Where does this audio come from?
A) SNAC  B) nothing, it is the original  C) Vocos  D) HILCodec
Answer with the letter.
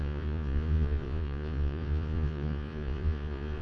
C